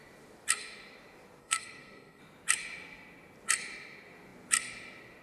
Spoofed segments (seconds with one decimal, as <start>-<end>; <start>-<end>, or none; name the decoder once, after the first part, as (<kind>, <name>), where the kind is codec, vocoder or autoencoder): 1.4-2.2 (codec, SNAC)